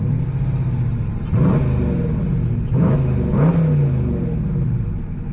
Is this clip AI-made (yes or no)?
no